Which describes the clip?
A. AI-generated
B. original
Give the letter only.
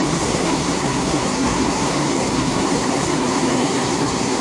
A